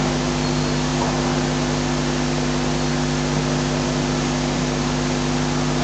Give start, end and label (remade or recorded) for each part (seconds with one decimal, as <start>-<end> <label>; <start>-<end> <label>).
0.0-5.8 recorded